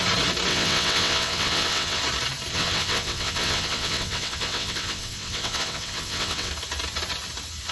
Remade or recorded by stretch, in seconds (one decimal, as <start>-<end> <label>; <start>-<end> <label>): 0.0-0.5 recorded; 0.5-2.0 remade; 2.0-2.5 recorded; 2.5-6.5 remade; 6.5-7.7 recorded